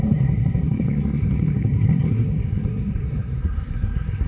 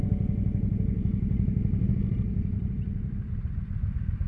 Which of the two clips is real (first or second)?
second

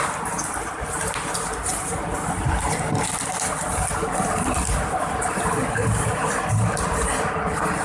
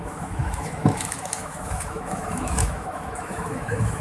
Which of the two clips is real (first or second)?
first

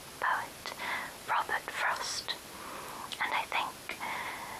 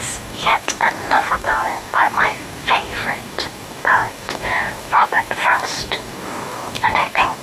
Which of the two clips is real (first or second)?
first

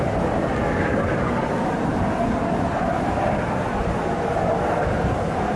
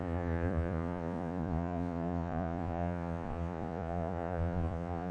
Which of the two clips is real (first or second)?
first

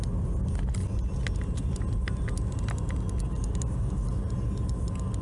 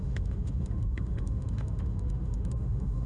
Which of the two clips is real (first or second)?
first